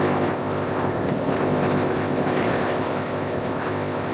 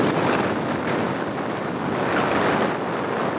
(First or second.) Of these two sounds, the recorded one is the second